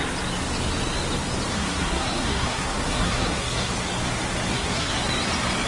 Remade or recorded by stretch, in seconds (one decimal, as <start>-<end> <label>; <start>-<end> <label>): 0.0-1.5 recorded; 1.5-3.7 remade; 3.7-4.5 recorded; 4.5-5.1 remade; 5.1-5.7 recorded